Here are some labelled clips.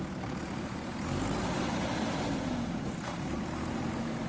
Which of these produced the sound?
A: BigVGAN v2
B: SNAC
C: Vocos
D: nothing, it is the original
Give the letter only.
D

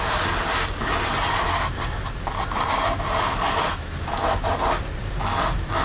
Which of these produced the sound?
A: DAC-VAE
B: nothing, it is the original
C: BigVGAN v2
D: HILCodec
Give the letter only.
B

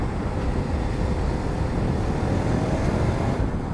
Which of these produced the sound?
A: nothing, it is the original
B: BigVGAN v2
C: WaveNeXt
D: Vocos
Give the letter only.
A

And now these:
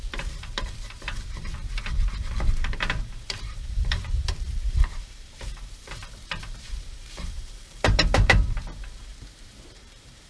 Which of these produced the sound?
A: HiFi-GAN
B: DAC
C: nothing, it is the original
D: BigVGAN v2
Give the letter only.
D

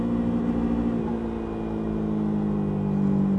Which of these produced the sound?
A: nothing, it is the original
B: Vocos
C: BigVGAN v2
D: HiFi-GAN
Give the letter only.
A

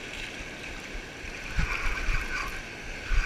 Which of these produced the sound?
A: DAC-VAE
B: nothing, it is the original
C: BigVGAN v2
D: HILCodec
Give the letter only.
B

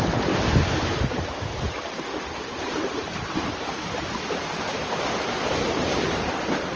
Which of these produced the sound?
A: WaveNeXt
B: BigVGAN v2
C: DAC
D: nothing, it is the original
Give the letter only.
B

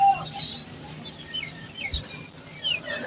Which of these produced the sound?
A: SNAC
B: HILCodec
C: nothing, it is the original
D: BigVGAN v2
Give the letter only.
D